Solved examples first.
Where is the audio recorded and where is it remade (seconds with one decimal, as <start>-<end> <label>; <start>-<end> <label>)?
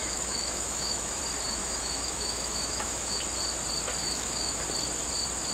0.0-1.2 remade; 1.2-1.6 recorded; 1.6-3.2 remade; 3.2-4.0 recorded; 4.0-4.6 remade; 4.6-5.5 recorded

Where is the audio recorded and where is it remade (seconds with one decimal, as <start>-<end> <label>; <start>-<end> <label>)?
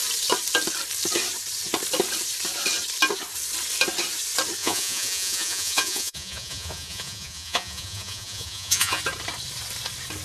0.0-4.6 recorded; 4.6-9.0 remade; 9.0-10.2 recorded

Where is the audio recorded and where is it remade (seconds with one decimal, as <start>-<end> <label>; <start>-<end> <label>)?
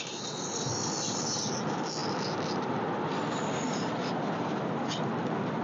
0.0-5.6 recorded